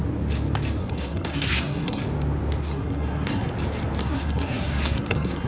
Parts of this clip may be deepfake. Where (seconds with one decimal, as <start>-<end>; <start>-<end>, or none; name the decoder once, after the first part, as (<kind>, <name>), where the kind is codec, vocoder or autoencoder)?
0.8-2.0 (codec, SNAC); 2.6-3.5; 4.0-5.5